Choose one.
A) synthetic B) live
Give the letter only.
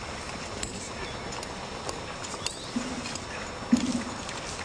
B